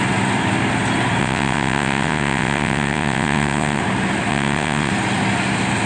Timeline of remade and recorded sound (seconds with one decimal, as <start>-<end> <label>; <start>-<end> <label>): 0.0-1.2 recorded; 1.2-3.8 remade; 3.8-4.3 recorded; 4.3-4.9 remade; 4.9-5.9 recorded